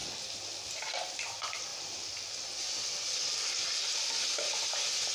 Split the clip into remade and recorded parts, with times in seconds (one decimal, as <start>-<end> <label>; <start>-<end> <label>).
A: 0.0-0.9 remade; 0.9-1.7 recorded; 1.7-3.8 remade; 3.8-5.1 recorded